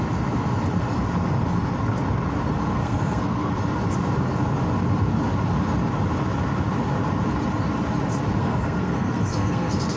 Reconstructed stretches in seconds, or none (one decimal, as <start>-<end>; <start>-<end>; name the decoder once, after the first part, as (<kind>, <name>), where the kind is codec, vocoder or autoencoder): 2.7-3.5 (codec, SNAC); 8.4-10.0